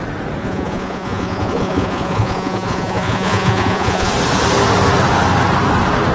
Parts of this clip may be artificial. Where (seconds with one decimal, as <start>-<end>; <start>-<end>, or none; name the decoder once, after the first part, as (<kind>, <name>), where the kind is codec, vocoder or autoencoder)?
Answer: 0.4-4.1 (vocoder, Vocos)